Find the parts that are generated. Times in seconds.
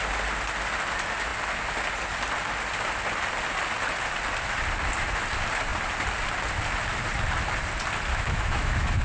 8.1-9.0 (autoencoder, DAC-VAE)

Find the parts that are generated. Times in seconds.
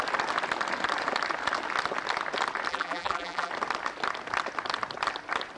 2.7-3.5 (vocoder, BigVGAN v2)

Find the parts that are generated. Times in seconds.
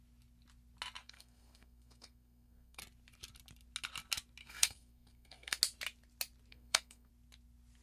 1.0-2.8 (codec, SNAC); 4.4-5.6; 6.5-7.1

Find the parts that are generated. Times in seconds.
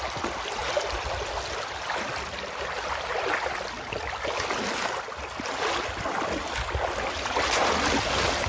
none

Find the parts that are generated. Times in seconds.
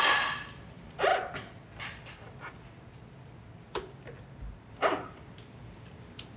0.0-1.1 (vocoder, BigVGAN v2); 4.7-6.4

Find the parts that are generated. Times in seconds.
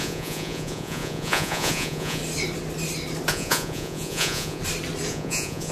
0.0-2.2 (vocoder, Vocos); 3.3-4.6; 5.1-5.7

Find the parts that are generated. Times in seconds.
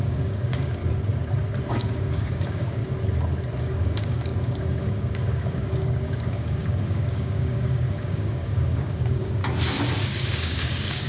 0.0-0.8 (codec, DAC); 1.7-2.8; 3.6-9.4; 10.2-11.1